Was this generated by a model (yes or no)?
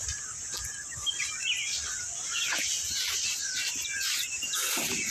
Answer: no